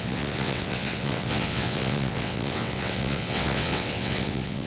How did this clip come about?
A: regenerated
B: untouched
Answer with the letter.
A